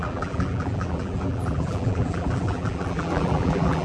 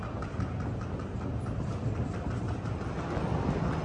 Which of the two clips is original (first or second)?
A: second